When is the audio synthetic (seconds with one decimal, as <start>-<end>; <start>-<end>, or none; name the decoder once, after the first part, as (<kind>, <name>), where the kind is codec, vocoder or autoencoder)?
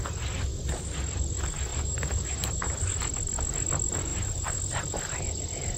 1.7-2.8 (vocoder, BigVGAN v2); 4.1-4.6